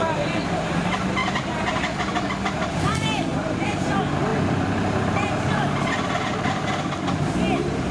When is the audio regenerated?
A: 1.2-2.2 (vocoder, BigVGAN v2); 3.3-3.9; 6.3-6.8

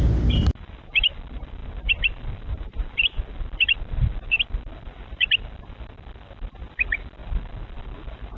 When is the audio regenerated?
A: none